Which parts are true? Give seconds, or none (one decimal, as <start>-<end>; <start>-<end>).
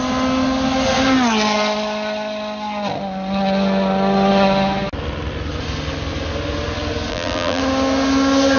0.0-7.1; 7.6-8.6